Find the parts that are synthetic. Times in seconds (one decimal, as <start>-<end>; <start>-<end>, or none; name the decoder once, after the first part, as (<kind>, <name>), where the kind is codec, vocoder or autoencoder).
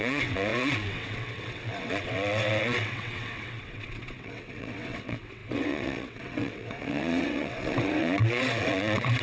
0.0-9.2 (vocoder, WaveNeXt)